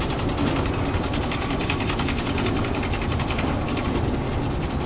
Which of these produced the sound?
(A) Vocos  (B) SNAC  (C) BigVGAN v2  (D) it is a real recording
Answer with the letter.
D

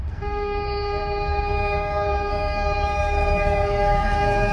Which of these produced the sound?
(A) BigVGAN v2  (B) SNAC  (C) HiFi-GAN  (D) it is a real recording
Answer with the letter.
B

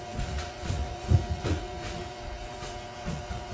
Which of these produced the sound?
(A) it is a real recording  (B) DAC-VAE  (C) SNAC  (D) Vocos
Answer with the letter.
D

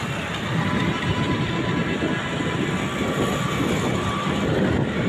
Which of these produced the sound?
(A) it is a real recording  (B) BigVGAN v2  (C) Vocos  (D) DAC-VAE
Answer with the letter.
A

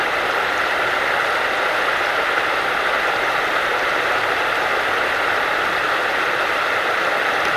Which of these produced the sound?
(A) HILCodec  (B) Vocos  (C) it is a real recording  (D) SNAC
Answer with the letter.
C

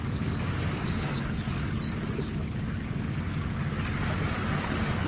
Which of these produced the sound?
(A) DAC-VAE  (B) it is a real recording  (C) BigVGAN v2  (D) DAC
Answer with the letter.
D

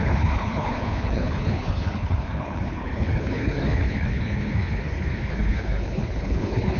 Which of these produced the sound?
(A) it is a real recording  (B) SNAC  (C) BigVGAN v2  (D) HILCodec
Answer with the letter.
D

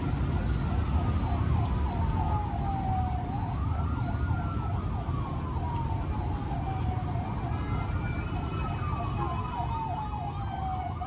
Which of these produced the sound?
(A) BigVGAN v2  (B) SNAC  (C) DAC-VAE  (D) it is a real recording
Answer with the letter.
D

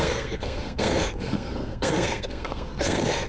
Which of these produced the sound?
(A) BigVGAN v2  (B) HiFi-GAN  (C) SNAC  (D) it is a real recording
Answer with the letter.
C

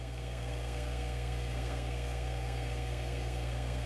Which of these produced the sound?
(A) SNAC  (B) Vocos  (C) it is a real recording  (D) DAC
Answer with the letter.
A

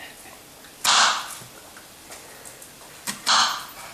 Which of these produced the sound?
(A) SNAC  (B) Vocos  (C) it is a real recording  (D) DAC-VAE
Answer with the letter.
C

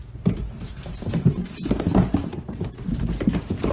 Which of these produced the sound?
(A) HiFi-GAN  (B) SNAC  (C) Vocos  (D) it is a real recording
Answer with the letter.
D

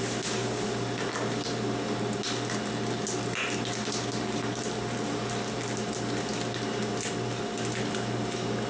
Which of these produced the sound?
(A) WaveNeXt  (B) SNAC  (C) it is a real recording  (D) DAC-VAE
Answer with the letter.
C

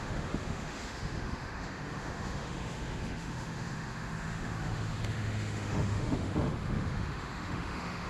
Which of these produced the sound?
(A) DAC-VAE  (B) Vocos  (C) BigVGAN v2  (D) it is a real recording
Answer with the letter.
A